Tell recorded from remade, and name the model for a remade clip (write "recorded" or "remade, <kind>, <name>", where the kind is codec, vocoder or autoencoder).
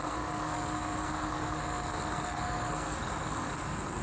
remade, codec, SNAC